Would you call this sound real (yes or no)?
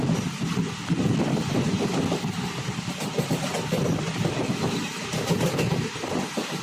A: yes